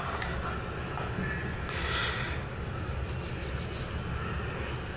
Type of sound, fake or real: real